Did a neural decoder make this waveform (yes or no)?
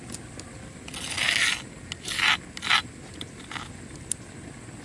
no